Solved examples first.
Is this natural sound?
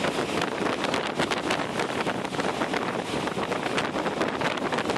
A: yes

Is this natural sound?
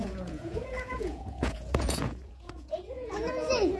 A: no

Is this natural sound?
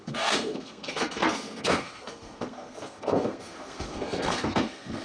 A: no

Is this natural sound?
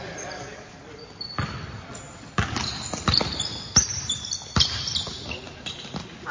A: yes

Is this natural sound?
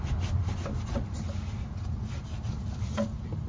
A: yes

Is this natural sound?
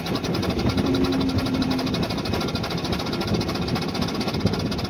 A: yes